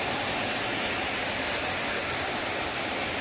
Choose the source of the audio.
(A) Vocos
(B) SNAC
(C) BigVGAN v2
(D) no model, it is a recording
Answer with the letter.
D